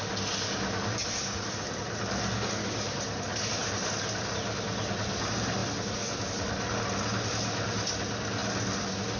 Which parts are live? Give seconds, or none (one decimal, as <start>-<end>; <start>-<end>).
0.0-9.2